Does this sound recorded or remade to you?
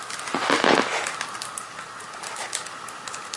recorded